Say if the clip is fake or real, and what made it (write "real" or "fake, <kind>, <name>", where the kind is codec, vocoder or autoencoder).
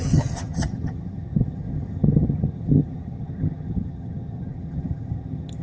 fake, vocoder, HiFi-GAN